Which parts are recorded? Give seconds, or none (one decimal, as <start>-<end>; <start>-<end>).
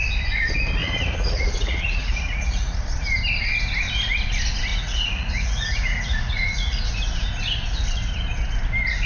0.0-0.8; 2.8-4.7; 6.8-9.1